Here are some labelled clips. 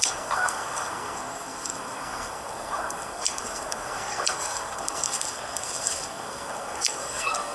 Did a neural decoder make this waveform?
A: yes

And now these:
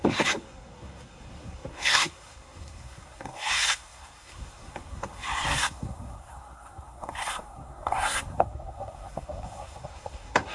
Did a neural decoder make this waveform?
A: yes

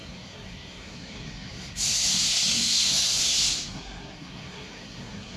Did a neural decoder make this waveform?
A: yes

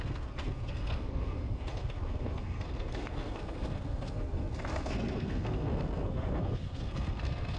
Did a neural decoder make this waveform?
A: yes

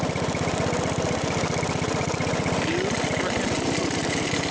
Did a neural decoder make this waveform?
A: no